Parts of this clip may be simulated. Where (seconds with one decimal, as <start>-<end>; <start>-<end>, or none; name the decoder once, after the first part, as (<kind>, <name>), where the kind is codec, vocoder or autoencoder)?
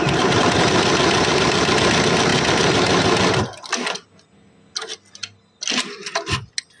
none